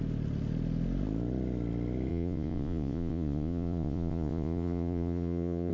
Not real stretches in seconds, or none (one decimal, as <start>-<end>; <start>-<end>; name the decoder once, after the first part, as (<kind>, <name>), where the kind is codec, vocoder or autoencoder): 2.1-5.7 (vocoder, Vocos)